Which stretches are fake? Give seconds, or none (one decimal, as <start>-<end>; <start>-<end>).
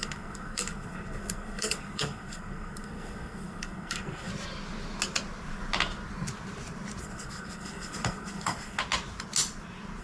0.0-4.3; 7.0-8.8